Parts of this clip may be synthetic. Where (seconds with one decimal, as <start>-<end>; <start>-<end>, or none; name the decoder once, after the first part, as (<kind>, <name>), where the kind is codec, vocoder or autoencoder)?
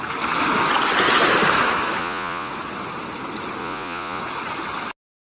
2.0-2.5 (vocoder, Vocos); 3.6-4.2